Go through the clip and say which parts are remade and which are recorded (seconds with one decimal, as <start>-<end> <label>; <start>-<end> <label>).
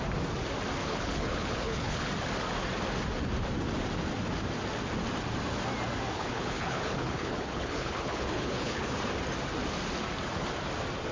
0.0-0.8 recorded; 0.8-2.1 remade; 2.1-6.1 recorded; 6.1-9.0 remade; 9.0-11.1 recorded